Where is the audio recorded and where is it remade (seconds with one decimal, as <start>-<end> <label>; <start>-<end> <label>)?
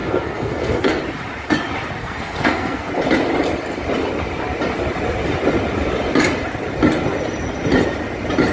0.0-1.0 remade; 1.0-2.0 recorded; 2.0-2.9 remade; 2.9-8.5 recorded